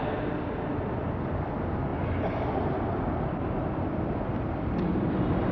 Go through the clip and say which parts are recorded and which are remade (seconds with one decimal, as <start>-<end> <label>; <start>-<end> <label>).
0.0-5.5 recorded